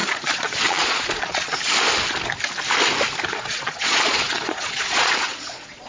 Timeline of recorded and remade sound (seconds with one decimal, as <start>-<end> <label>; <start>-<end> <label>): 0.0-1.6 remade; 1.6-3.3 recorded; 3.3-5.9 remade